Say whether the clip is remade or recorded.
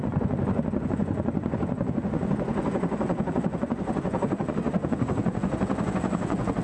remade